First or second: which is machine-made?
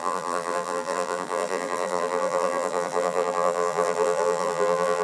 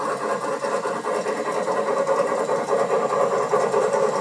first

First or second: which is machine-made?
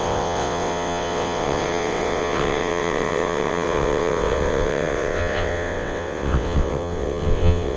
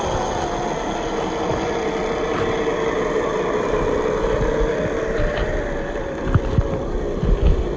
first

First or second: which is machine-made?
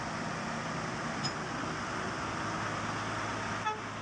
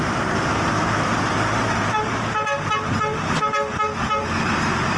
second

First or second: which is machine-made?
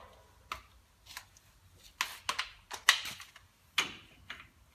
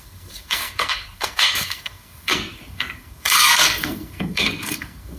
second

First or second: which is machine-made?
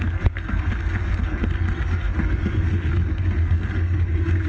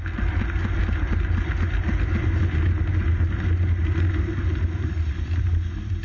first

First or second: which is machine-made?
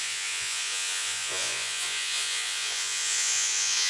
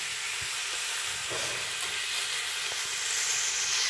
first